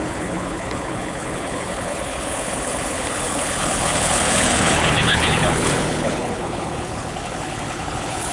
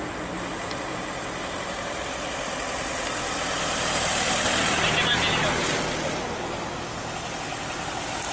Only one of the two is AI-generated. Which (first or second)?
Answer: first